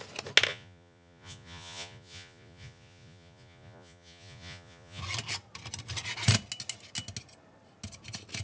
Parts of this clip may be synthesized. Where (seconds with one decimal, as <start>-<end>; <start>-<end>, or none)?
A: 0.5-5.0